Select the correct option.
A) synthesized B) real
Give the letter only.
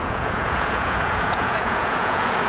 A